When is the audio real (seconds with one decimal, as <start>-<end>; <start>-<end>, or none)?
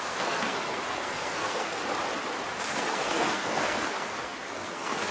1.8-2.6